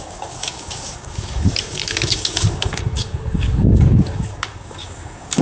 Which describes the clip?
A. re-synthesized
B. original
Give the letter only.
A